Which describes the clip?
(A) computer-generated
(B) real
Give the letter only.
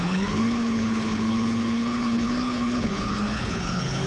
A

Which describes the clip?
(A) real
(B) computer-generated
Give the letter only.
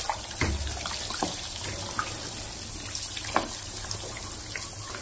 A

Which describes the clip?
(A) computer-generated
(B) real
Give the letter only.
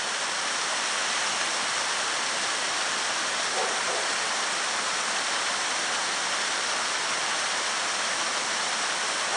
B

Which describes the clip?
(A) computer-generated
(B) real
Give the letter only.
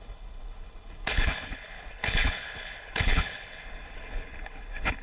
A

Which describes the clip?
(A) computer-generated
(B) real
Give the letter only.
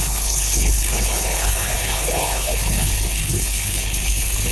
A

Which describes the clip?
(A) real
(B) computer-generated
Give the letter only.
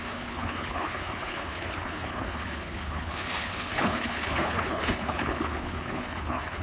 B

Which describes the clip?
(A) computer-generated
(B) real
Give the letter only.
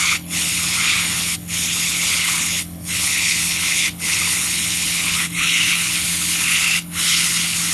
A